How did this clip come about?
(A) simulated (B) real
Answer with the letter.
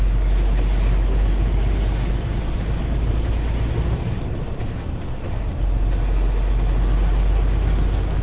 B